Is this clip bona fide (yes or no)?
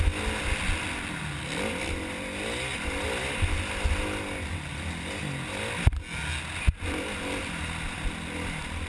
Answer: yes